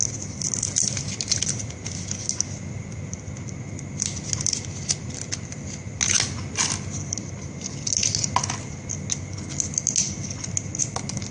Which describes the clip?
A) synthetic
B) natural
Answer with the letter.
B